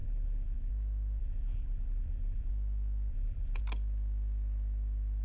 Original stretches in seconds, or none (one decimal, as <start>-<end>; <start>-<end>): 0.7-1.2; 2.5-3.1; 3.6-5.2